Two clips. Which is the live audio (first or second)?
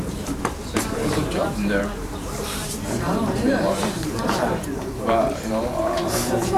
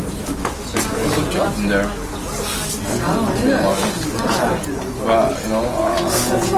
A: second